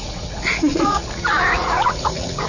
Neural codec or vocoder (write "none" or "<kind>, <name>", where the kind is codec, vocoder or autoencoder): vocoder, Vocos